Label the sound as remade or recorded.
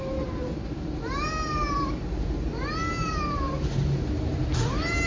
remade